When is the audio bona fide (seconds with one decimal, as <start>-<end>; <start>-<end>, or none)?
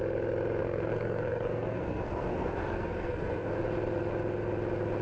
0.0-0.6; 3.6-5.0